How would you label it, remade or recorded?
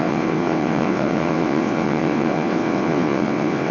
remade